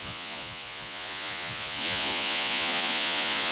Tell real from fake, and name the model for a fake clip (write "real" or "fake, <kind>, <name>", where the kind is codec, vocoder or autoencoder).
fake, vocoder, Vocos